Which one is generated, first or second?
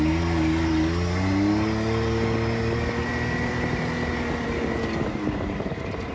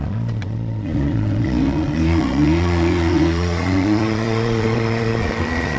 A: second